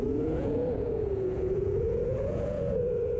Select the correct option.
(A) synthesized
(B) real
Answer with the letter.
A